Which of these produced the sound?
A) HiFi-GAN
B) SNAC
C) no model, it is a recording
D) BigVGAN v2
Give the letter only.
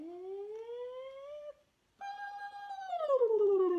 C